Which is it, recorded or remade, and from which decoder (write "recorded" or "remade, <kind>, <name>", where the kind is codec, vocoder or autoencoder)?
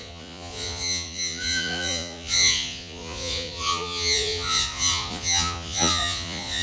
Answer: remade, vocoder, Vocos